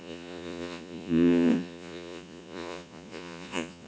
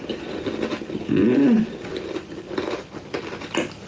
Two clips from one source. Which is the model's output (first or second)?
first